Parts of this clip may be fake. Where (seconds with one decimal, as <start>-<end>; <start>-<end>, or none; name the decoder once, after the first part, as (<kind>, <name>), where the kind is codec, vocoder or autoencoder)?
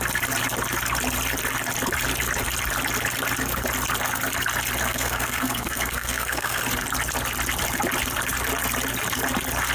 4.8-6.6 (codec, SNAC)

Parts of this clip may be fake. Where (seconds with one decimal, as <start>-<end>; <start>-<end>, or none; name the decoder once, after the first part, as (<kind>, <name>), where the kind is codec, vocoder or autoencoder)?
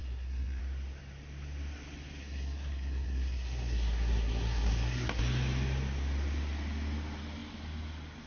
0.0-0.6 (codec, SNAC); 2.2-5.2